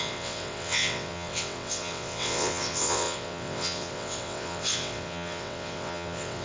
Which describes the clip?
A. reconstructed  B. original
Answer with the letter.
A